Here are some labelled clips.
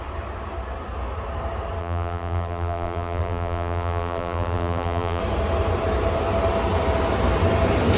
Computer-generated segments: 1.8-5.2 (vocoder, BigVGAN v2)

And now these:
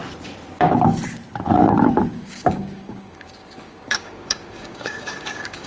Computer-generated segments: 2.1-5.7 (codec, DAC)

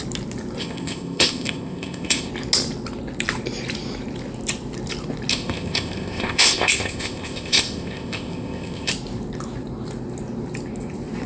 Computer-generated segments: 0.6-2.3 (codec, ZipCodec); 5.3-8.9

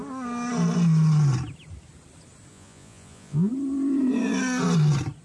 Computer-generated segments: 2.5-3.5 (vocoder, Vocos)

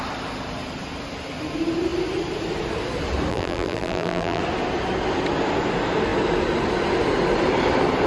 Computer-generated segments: 3.3-4.4 (vocoder, BigVGAN v2)

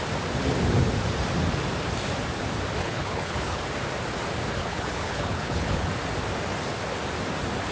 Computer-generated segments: 2.8-3.6 (codec, HILCodec); 4.6-5.9

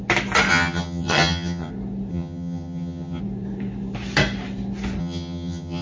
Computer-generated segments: 0.5-1.7 (vocoder, HiFi-GAN); 2.1-3.2; 5.0-5.8

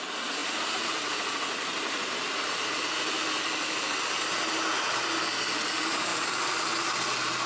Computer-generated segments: 0.4-1.2 (vocoder, BigVGAN v2)